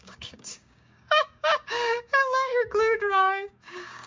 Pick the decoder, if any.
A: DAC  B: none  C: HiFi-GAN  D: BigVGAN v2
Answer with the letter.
A